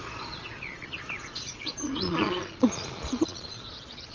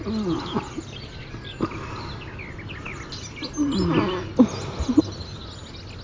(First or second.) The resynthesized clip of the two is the first